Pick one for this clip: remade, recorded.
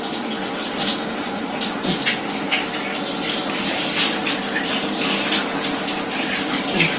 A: recorded